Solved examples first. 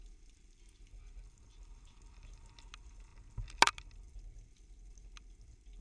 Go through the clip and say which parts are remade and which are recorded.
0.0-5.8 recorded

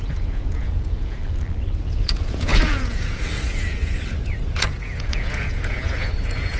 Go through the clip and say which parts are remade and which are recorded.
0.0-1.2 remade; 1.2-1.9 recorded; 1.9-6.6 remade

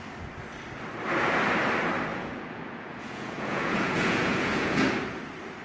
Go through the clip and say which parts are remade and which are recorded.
0.0-2.1 recorded; 2.1-4.8 remade; 4.8-5.6 recorded